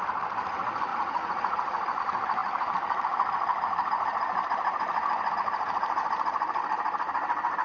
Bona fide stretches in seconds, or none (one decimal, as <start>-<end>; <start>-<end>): 0.0-0.9; 2.0-7.6